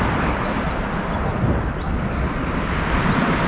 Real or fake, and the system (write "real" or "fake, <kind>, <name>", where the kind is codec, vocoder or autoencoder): real